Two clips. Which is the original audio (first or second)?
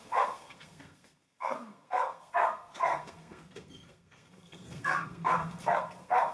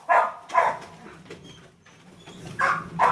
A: second